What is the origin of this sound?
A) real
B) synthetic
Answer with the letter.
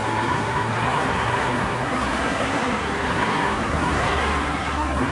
B